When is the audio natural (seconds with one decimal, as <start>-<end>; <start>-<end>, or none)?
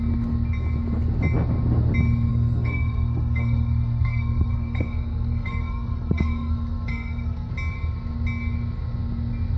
0.0-2.3; 7.5-9.6